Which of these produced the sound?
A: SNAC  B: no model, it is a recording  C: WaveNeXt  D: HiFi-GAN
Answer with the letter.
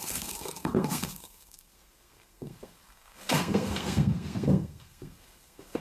A